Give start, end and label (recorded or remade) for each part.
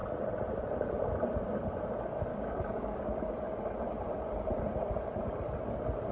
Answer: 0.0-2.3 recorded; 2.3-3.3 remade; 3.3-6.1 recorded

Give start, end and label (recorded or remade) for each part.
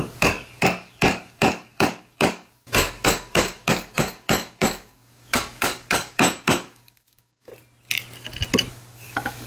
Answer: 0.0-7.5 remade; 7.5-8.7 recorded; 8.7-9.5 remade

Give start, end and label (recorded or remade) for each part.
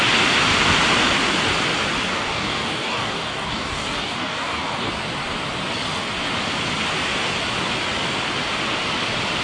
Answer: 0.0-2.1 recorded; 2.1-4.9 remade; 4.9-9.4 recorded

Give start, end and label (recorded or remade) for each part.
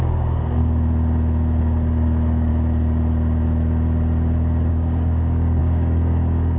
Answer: 0.0-0.6 remade; 0.6-1.6 recorded; 1.6-2.5 remade; 2.5-4.7 recorded; 4.7-6.6 remade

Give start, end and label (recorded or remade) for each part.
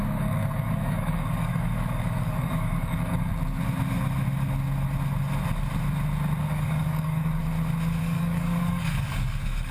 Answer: 0.0-3.3 remade; 3.3-6.4 recorded; 6.4-7.4 remade; 7.4-8.0 recorded; 8.0-9.7 remade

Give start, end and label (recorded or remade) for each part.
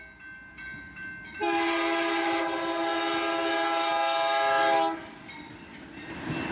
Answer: 0.0-6.5 recorded